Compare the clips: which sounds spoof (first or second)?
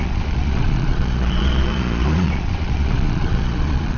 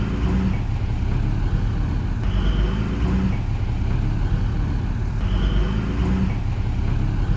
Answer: first